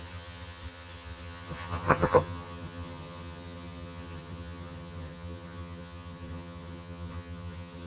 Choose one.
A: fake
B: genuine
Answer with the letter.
A